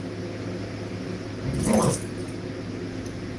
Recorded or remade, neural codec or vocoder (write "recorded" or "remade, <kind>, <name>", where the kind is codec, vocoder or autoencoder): recorded